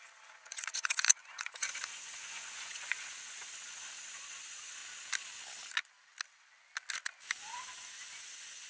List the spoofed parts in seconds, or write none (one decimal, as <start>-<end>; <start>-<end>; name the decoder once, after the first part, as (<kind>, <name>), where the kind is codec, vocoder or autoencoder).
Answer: 0.0-4.8 (vocoder, Vocos); 7.4-8.7

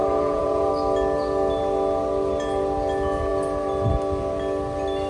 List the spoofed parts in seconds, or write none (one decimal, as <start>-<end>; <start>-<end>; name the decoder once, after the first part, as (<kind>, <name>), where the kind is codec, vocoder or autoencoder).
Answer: 0.0-0.7 (vocoder, Vocos)

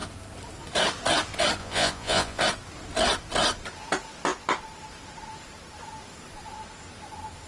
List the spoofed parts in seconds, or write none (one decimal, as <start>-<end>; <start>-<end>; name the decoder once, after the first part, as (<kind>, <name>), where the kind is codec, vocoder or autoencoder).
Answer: 1.6-2.4 (vocoder, Vocos)

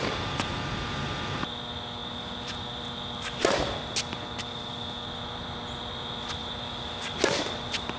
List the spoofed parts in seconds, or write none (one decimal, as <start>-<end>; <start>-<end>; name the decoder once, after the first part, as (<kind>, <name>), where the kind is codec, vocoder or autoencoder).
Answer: none

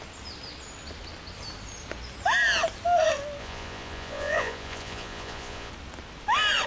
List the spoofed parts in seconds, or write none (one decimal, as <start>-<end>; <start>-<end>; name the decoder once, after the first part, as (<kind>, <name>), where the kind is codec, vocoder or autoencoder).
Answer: 3.4-5.7 (vocoder, Vocos)

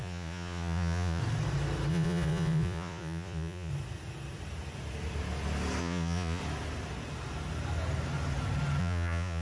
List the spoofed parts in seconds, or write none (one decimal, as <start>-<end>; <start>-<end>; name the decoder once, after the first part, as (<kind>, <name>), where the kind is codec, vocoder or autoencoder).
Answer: 0.0-1.2 (vocoder, Vocos); 1.9-3.7; 5.8-6.4; 8.8-9.4

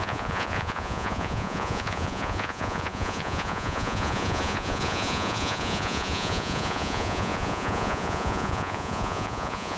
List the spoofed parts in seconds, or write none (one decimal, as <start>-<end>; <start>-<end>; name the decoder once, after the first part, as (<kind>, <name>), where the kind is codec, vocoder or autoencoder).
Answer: 0.0-9.8 (vocoder, Vocos)

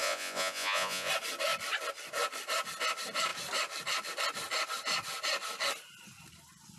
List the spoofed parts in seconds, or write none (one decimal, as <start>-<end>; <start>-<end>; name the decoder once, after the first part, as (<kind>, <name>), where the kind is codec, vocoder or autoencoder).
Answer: 0.0-1.1 (vocoder, Vocos)